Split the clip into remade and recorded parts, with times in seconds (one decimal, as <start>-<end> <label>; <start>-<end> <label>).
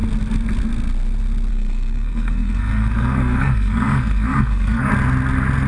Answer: 0.0-1.5 recorded; 1.5-4.9 remade; 4.9-5.7 recorded